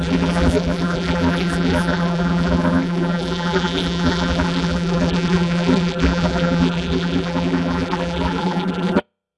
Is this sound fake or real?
fake